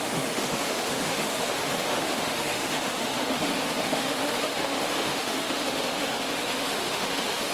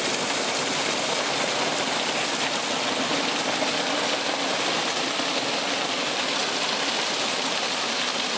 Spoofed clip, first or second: first